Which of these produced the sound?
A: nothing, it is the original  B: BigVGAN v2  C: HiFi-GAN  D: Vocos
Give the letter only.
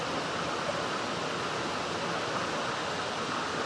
A